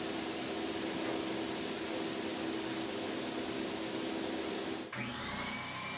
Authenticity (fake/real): real